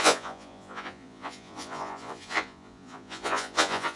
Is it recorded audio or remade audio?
remade